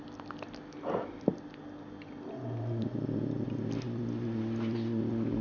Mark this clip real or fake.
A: real